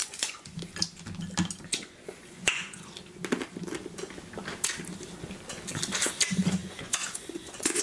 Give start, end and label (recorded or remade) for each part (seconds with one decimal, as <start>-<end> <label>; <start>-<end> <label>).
0.0-0.6 remade; 0.6-1.7 recorded; 1.7-2.9 remade; 2.9-6.6 recorded; 6.6-7.8 remade